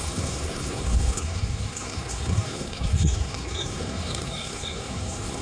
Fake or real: fake